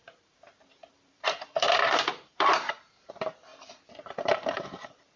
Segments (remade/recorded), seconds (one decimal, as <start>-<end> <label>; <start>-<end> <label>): 0.0-3.1 remade; 3.1-3.5 recorded; 3.5-5.2 remade